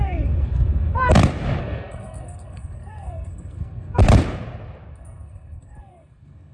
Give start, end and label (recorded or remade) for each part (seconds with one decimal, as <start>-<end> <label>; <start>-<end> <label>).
0.0-1.0 remade; 1.0-1.6 recorded; 1.6-4.0 remade; 4.0-4.9 recorded; 4.9-6.5 remade